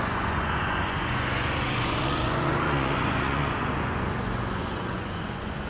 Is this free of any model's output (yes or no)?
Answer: no